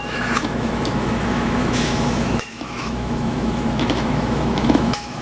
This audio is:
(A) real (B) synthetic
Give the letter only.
B